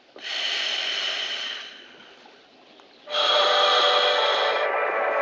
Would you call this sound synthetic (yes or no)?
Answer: no